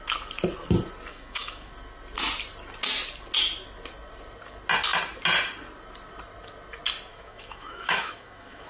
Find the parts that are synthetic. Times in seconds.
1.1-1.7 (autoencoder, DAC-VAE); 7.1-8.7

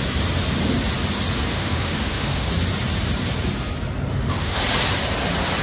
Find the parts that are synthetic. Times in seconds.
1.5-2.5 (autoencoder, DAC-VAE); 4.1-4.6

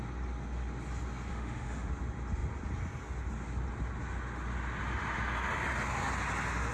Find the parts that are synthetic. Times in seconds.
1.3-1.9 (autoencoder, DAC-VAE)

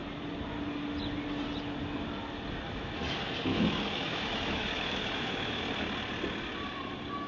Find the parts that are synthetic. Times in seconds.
3.5-5.6 (autoencoder, DAC-VAE)

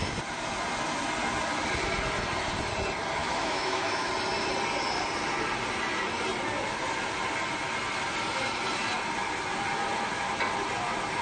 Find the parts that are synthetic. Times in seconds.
3.2-4.1 (autoencoder, DAC-VAE)

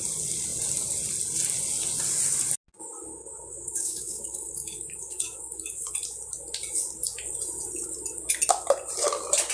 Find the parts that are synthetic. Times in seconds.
3.1-5.9 (autoencoder, DAC-VAE)

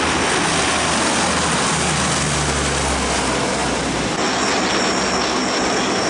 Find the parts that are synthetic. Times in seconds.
none